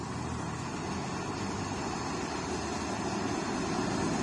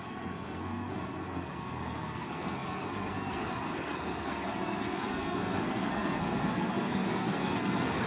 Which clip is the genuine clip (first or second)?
first